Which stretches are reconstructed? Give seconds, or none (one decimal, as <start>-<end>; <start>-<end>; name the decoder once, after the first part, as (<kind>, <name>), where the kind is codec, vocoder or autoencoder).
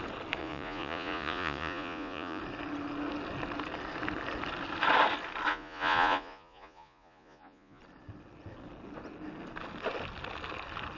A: 0.4-2.4 (vocoder, Vocos); 5.5-7.8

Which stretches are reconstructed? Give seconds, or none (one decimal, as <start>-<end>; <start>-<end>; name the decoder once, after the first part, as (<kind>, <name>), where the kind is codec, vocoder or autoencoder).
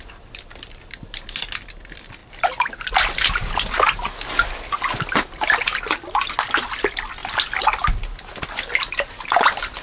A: none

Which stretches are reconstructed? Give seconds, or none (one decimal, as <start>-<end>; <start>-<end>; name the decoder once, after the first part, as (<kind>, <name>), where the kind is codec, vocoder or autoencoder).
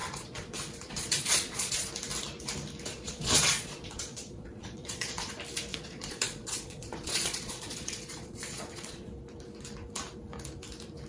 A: 0.0-1.9 (vocoder, Vocos); 2.9-5.3; 5.7-9.1